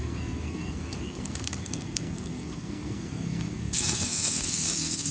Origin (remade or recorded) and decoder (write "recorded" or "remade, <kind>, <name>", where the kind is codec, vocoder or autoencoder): remade, codec, SNAC